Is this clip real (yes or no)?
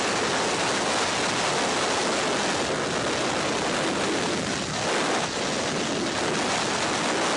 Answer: yes